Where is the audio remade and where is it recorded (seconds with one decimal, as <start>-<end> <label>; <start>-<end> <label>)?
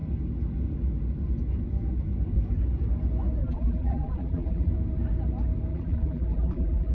0.0-3.4 recorded; 3.4-4.7 remade; 4.7-5.7 recorded; 5.7-6.9 remade